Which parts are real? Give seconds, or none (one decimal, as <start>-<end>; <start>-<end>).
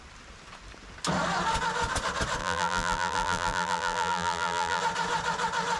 0.0-2.4; 4.8-5.8